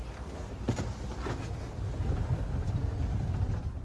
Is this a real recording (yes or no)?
yes